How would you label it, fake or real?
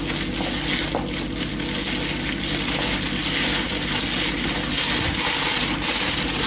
real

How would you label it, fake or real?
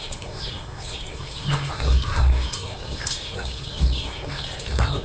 fake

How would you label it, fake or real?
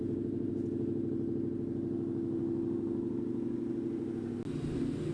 real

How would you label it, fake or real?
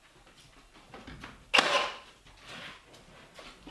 real